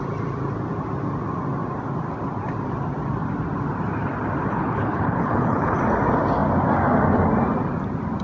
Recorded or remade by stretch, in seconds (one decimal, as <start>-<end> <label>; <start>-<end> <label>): 0.0-4.5 recorded; 4.5-5.8 remade; 5.8-8.2 recorded